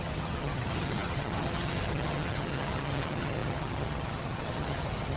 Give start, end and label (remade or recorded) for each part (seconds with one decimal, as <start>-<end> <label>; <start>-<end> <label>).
0.0-5.2 remade